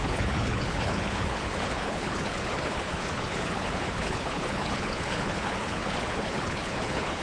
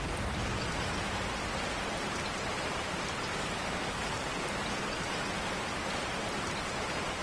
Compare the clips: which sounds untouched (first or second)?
second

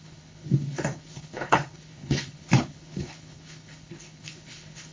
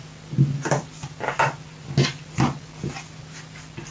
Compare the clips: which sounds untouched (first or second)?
second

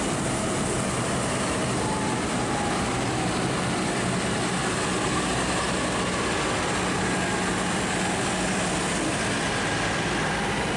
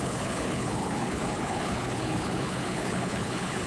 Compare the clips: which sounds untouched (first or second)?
first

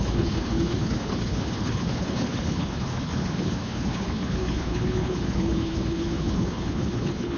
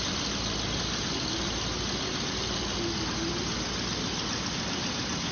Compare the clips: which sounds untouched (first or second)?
second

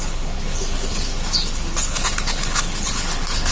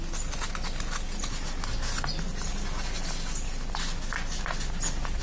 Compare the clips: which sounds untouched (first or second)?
second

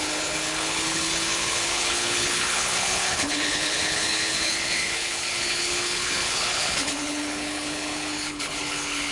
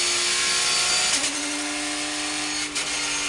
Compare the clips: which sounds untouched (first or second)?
second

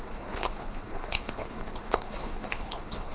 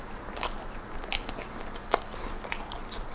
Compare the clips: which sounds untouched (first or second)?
second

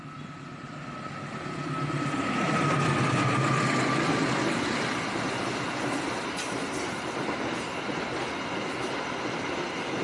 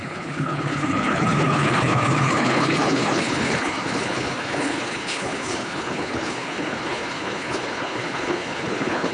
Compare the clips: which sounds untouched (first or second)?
first